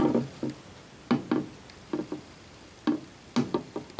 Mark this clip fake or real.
real